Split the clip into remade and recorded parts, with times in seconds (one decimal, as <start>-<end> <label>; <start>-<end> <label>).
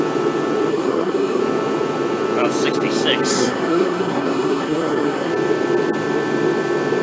0.0-0.7 recorded; 0.7-1.4 remade; 1.4-3.3 recorded; 3.3-5.3 remade; 5.3-7.0 recorded